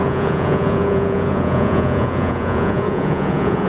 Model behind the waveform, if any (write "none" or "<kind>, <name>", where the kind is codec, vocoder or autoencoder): vocoder, Vocos